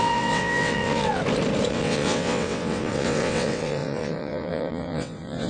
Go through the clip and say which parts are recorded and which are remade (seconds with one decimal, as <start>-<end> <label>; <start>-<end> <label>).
0.0-1.2 remade; 1.2-1.7 recorded; 1.7-5.5 remade